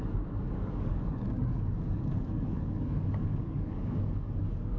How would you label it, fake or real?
fake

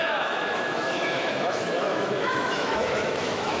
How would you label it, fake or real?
fake